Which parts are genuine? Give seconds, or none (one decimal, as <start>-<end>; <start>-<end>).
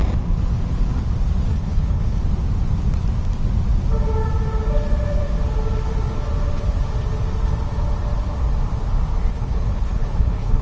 0.0-1.5; 2.2-9.3